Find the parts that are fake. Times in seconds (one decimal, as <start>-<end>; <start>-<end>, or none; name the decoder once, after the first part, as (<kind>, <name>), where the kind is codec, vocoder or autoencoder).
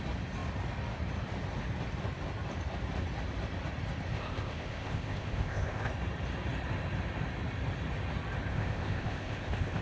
4.1-5.9 (codec, ZipCodec); 8.5-9.8